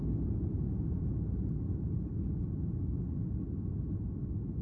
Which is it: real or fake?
real